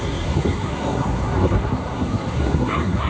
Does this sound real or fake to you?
fake